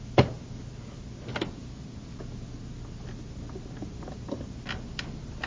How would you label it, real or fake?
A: real